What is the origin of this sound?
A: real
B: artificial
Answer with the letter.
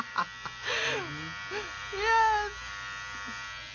A